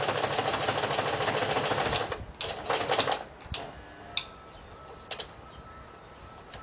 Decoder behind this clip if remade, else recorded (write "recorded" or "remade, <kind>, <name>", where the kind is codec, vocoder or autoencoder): recorded